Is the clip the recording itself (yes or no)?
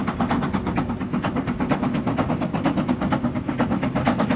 yes